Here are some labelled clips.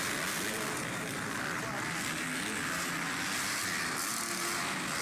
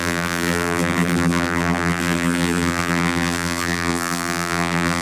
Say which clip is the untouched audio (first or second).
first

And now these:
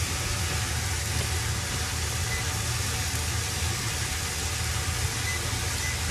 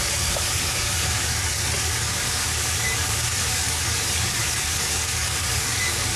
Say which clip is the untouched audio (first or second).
first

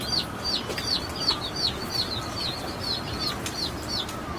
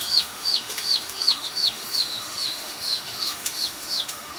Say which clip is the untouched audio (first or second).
first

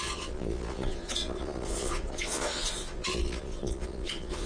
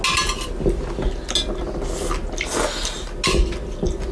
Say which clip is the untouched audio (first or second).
second